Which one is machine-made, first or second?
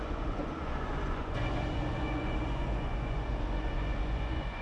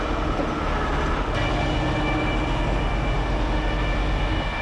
first